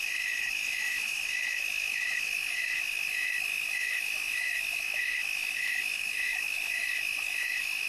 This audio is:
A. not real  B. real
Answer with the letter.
A